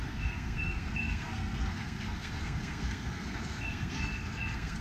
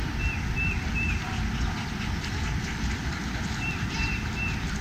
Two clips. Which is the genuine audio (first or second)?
second